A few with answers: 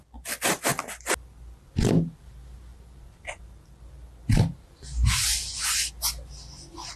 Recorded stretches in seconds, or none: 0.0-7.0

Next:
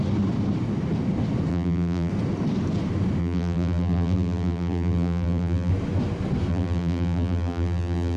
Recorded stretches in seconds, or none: 0.0-1.5; 2.1-3.2; 5.7-6.5

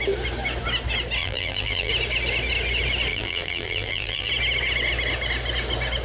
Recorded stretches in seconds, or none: 0.0-1.2; 1.9-3.1; 4.3-6.0